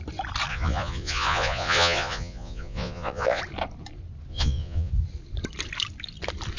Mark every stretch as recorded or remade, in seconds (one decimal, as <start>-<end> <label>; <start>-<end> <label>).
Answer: 0.0-0.5 recorded; 0.5-3.4 remade; 3.4-4.3 recorded; 4.3-4.9 remade; 4.9-6.6 recorded